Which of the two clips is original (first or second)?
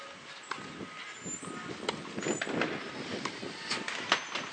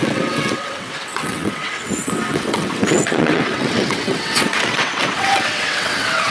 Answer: first